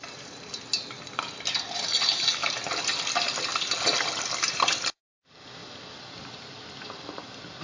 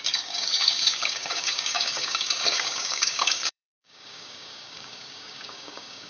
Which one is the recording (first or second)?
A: first